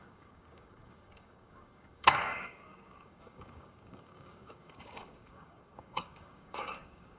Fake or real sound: fake